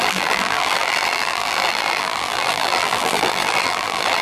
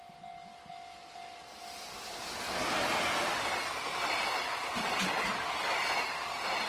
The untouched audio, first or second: second